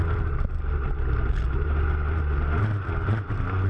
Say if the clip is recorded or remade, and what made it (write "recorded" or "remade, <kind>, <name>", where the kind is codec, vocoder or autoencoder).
recorded